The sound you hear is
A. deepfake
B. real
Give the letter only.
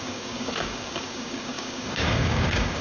A